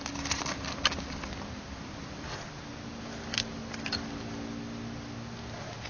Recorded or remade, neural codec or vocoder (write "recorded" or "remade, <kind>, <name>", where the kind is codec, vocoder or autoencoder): recorded